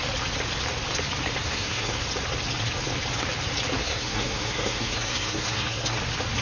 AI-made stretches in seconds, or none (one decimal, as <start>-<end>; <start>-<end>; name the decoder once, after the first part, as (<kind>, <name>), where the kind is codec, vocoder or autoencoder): 1.4-2.0 (codec, SNAC); 3.8-6.0